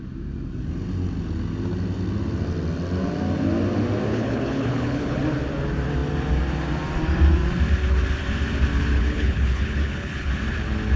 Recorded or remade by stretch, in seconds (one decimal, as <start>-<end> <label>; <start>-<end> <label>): 0.0-4.1 recorded; 4.1-5.2 remade; 5.2-8.9 recorded; 8.9-10.3 remade; 10.3-11.0 recorded